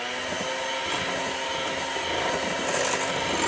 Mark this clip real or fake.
real